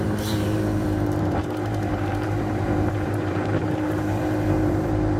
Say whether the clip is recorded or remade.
remade